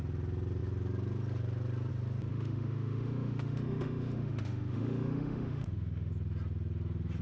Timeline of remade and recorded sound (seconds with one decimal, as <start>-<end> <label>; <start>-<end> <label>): 0.0-2.3 recorded; 2.3-6.1 remade; 6.1-7.2 recorded